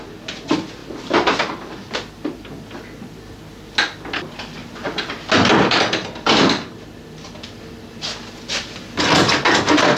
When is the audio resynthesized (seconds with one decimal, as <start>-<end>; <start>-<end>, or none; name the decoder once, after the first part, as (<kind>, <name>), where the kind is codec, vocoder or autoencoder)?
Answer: 0.8-1.8 (vocoder, BigVGAN v2); 4.6-5.3